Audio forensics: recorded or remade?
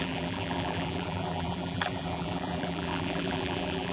remade